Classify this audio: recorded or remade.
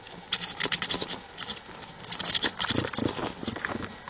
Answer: recorded